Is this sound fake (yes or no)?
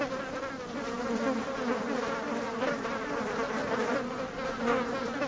no